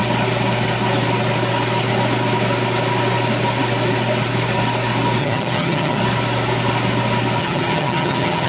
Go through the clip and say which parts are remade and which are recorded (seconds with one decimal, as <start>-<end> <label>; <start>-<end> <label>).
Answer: 0.0-5.2 recorded; 5.2-6.0 remade; 6.0-7.4 recorded; 7.4-8.5 remade